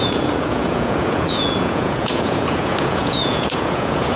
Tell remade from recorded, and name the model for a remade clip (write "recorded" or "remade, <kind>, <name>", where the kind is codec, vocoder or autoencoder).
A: remade, vocoder, Vocos